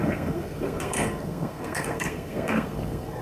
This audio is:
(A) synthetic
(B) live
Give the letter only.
A